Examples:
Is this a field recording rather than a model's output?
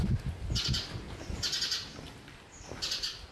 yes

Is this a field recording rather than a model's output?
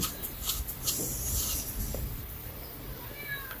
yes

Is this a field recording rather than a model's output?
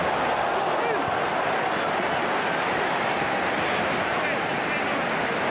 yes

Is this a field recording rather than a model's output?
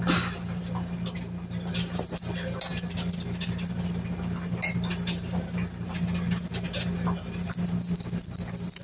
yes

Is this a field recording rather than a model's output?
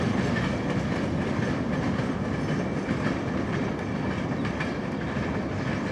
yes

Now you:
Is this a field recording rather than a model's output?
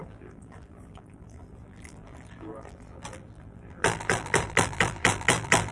no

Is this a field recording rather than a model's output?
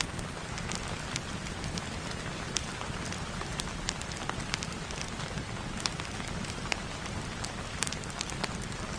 no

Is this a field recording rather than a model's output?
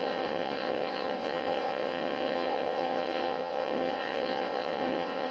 no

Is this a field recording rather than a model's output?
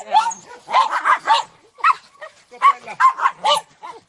yes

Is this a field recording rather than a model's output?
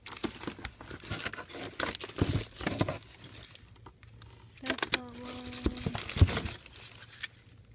yes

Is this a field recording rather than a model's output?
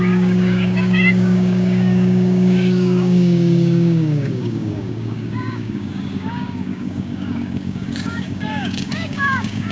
no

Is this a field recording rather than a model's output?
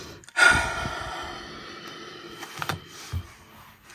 yes